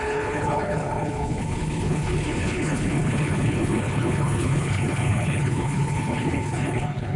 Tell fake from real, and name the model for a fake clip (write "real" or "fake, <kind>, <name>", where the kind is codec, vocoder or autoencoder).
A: fake, codec, HILCodec